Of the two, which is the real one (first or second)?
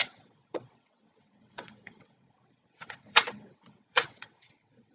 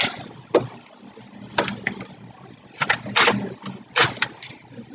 second